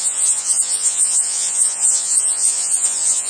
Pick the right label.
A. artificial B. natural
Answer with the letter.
A